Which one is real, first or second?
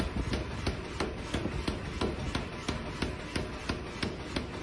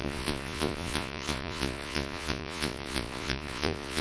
first